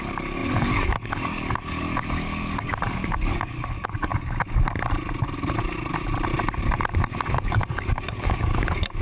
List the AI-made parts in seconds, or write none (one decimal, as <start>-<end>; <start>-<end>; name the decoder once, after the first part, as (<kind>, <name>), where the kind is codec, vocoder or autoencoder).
0.0-4.1 (codec, DAC); 7.3-9.0